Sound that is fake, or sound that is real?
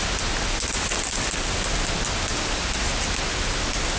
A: real